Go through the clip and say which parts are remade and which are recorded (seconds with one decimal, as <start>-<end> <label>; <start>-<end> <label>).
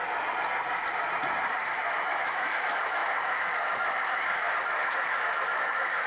0.0-1.5 recorded; 1.5-6.1 remade